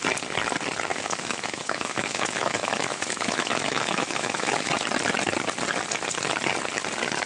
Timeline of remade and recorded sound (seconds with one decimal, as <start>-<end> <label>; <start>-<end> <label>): 0.0-0.9 recorded; 0.9-4.7 remade; 4.7-7.3 recorded